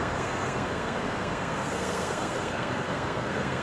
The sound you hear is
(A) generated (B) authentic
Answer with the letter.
A